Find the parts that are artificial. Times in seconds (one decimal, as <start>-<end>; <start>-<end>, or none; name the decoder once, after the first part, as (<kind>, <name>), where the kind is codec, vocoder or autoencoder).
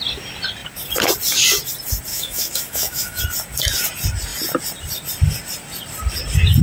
2.1-3.2 (autoencoder, DAC-VAE)